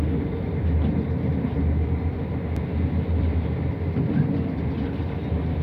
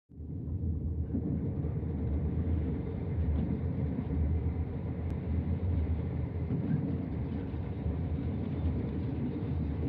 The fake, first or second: second